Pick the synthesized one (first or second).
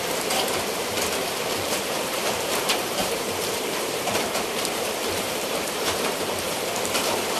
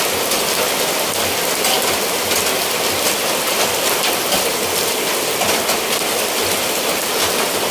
first